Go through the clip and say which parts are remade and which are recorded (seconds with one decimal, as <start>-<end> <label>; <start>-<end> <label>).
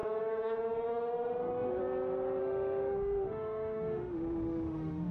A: 0.0-1.8 remade; 1.8-2.4 recorded; 2.4-5.1 remade